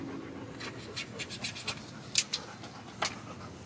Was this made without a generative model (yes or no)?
yes